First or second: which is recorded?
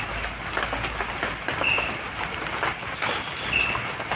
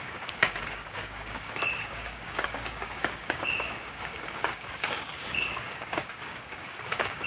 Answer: first